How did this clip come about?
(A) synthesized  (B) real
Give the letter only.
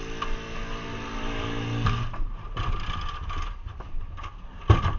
B